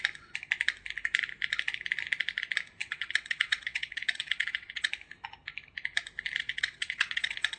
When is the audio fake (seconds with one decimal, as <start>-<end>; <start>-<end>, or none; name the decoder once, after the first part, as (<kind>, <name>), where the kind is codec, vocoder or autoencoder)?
2.8-4.9 (vocoder, WaveNeXt); 6.4-7.6